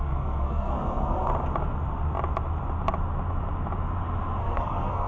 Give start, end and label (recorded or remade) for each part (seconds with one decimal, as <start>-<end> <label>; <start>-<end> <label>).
0.0-1.3 remade; 1.3-4.4 recorded; 4.4-5.1 remade

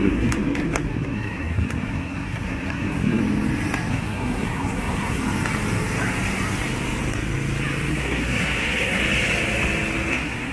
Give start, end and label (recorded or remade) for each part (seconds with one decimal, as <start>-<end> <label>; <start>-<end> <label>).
0.0-3.2 remade; 3.2-3.9 recorded; 3.9-5.2 remade; 5.2-7.9 recorded; 7.9-9.0 remade; 9.0-10.1 recorded; 10.1-10.5 remade

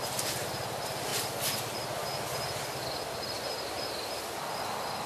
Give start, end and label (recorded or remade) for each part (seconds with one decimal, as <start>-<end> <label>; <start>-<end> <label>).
0.0-5.1 recorded

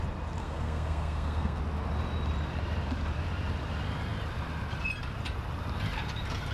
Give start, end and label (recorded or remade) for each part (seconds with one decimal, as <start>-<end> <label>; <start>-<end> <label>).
0.0-0.4 recorded; 0.4-1.6 remade; 1.6-6.5 recorded

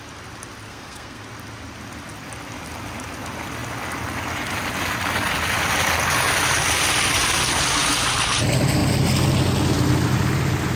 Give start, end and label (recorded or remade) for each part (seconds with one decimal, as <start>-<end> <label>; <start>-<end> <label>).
0.0-0.7 recorded; 0.7-1.2 remade; 1.2-10.8 recorded

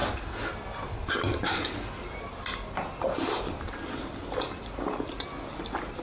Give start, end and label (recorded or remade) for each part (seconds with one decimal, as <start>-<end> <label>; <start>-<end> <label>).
0.0-6.0 recorded

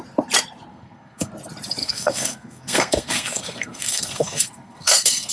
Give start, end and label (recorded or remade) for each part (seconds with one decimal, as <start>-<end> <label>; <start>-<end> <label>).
0.0-0.7 recorded; 0.7-1.3 remade; 1.3-1.8 recorded; 1.8-5.3 remade